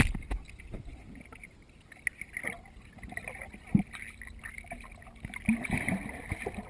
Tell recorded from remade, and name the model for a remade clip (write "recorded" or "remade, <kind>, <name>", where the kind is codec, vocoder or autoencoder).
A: recorded